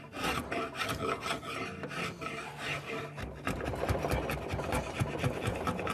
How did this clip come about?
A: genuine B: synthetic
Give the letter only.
A